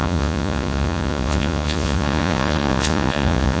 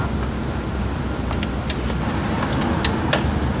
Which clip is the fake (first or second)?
first